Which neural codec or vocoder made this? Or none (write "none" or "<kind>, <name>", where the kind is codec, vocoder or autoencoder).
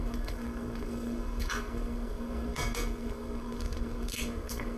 codec, SNAC